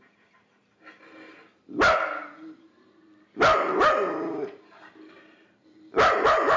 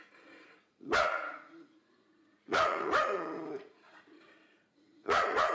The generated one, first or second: second